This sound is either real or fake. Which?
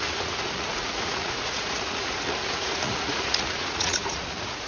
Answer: fake